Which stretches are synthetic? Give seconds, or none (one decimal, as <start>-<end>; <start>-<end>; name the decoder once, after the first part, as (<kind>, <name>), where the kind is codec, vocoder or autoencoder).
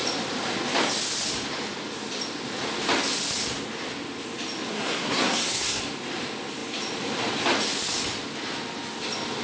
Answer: 4.7-5.8 (codec, SNAC)